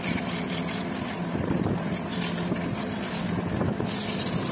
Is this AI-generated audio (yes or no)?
no